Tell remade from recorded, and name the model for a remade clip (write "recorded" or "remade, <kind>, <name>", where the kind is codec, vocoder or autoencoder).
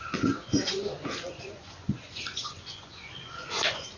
remade, vocoder, Vocos